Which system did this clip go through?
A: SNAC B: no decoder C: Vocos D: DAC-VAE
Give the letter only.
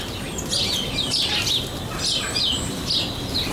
B